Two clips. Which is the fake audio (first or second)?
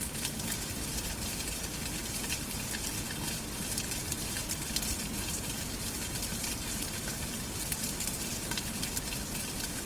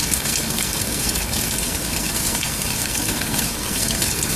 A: second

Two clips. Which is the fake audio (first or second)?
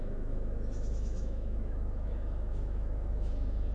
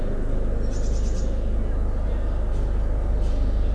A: first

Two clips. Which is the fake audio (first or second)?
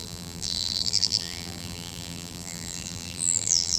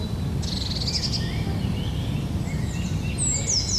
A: first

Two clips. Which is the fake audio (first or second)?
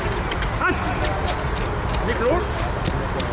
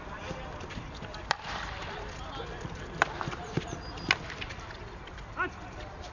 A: second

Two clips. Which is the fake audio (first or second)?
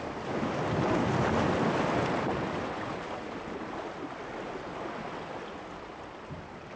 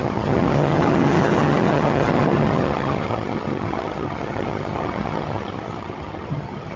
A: second